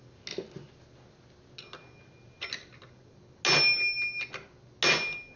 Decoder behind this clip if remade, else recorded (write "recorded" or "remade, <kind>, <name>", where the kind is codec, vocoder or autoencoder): recorded